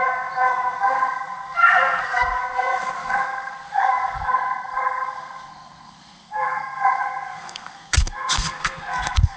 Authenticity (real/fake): fake